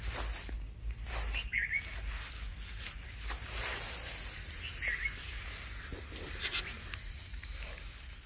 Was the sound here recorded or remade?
recorded